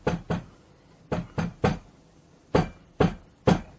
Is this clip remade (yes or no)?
no